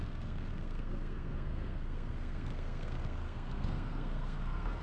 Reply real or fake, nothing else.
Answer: fake